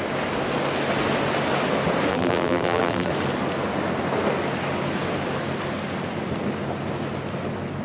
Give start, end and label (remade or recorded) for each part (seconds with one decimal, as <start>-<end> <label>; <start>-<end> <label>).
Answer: 0.0-2.1 recorded; 2.1-3.1 remade; 3.1-7.8 recorded